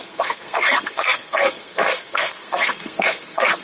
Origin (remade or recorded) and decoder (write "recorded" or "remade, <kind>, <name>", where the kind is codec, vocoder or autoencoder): remade, codec, SNAC